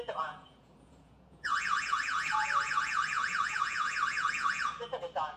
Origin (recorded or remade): remade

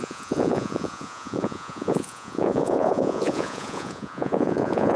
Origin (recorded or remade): remade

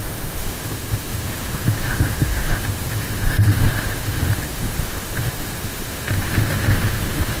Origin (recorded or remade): remade